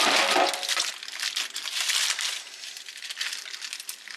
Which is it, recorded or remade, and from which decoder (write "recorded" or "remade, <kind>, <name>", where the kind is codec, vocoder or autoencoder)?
recorded